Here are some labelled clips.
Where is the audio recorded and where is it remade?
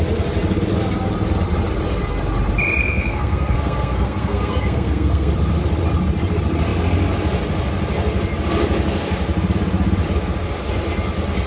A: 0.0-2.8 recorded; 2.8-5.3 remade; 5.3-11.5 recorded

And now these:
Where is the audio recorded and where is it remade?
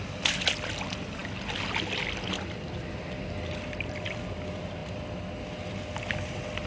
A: 0.0-6.7 recorded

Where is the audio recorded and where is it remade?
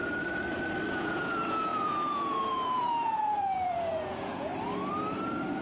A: 0.0-0.9 recorded; 0.9-4.5 remade; 4.5-5.6 recorded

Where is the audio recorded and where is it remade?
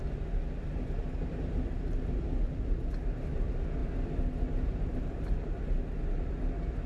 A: 0.0-6.9 recorded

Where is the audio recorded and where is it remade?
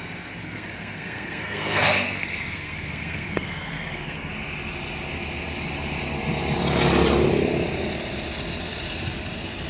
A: 0.0-0.4 recorded; 0.4-4.3 remade; 4.3-9.7 recorded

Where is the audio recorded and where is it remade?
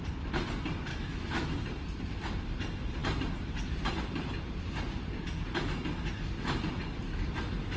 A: 0.0-0.9 recorded; 0.9-1.5 remade; 1.5-7.8 recorded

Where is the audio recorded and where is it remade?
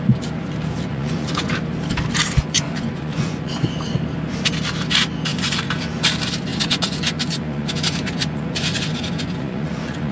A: 0.0-0.9 recorded; 0.9-1.5 remade; 1.5-2.4 recorded; 2.4-3.5 remade; 3.5-5.3 recorded; 5.3-6.0 remade; 6.0-6.5 recorded; 6.5-10.1 remade